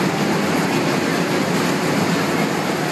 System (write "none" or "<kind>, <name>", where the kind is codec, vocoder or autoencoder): none